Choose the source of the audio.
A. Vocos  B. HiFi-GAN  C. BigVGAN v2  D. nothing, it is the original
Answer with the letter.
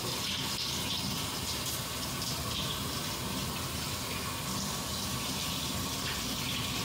D